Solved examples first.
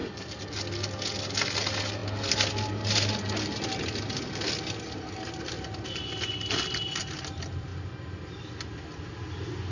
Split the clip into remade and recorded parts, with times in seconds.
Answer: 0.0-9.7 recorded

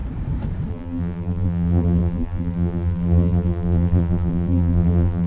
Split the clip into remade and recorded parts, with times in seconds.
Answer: 0.0-0.7 recorded; 0.7-5.3 remade